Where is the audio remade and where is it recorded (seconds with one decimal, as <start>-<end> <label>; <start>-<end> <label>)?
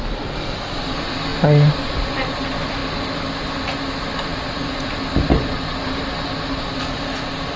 0.0-7.6 recorded